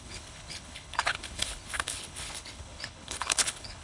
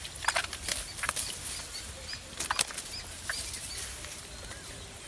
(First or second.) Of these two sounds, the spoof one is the first